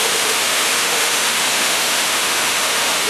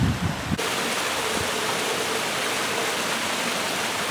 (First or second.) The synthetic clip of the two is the first